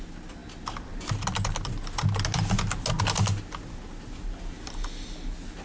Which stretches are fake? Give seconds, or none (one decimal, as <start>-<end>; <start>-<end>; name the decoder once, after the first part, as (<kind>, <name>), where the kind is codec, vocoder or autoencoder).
none